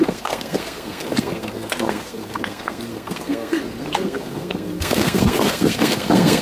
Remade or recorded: remade